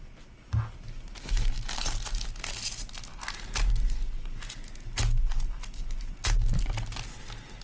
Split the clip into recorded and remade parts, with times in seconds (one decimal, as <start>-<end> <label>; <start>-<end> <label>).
0.0-7.6 recorded